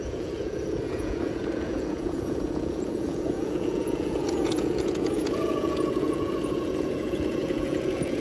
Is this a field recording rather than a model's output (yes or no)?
no